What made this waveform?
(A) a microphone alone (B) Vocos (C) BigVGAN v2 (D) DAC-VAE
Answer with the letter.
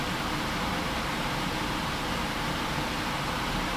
C